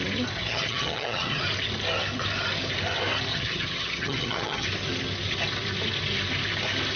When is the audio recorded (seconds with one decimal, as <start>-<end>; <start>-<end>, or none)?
0.0-0.4; 1.4-3.3; 4.7-7.0